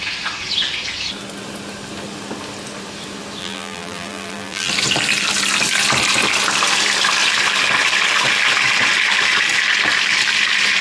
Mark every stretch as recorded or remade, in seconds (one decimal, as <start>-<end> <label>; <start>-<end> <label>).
0.0-3.4 recorded; 3.4-4.7 remade; 4.7-10.8 recorded